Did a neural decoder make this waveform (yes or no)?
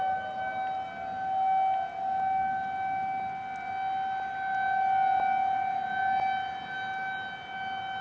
no